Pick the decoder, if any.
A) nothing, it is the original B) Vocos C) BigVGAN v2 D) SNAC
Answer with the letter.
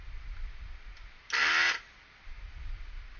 A